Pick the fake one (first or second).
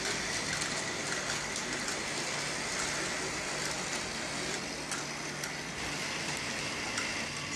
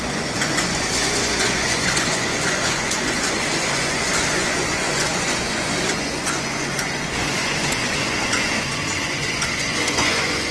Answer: second